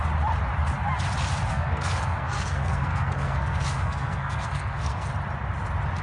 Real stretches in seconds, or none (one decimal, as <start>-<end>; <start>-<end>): 0.0-1.5; 5.1-6.0